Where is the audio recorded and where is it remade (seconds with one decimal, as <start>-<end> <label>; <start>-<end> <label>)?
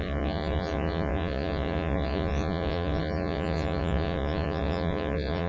0.0-5.5 remade